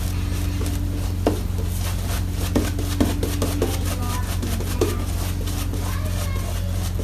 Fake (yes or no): no